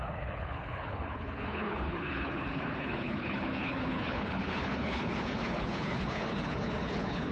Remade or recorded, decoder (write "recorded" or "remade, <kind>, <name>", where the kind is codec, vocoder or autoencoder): remade, codec, HILCodec